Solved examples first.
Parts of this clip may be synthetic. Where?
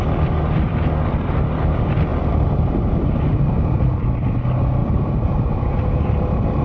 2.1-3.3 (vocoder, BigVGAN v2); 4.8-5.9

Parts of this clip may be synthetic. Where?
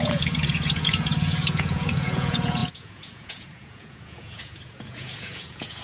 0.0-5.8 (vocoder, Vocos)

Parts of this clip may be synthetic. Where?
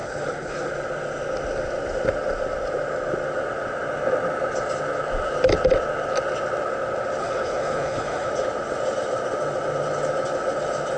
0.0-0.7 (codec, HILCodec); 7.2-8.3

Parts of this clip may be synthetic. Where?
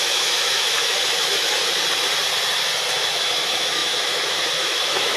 0.0-1.6 (autoencoder, DAC-VAE); 3.1-5.2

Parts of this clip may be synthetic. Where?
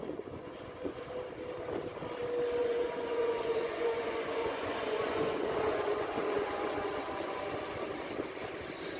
0.0-1.0 (vocoder, Vocos); 2.6-7.4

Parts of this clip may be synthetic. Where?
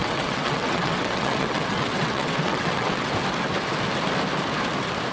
0.0-3.1 (vocoder, WaveNeXt)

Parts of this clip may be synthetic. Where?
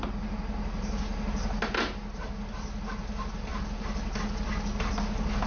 none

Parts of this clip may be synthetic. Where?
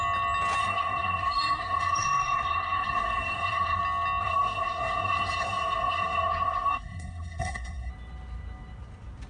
0.6-3.8 (codec, SNAC); 4.2-7.9